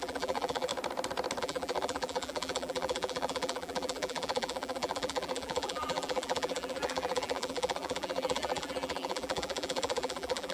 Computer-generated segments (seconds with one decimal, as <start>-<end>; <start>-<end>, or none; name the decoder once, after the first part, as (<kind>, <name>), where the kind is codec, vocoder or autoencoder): 0.0-0.7 (vocoder, BigVGAN v2); 1.4-10.5